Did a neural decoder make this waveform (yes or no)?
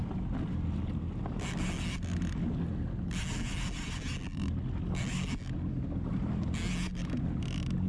no